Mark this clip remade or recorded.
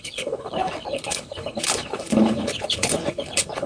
remade